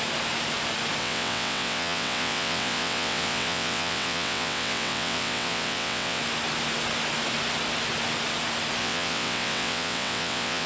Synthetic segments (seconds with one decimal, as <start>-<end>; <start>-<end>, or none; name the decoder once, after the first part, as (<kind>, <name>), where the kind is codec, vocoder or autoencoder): 1.0-6.2 (vocoder, WaveNeXt); 8.8-10.7